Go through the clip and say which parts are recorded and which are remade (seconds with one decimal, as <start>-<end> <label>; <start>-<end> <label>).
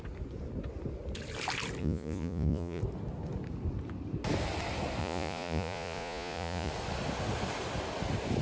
0.0-1.8 recorded; 1.8-2.8 remade; 2.8-5.0 recorded; 5.0-6.7 remade; 6.7-8.4 recorded